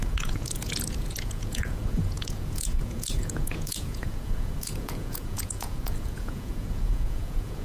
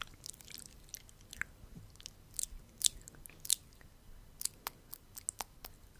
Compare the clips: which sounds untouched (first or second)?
second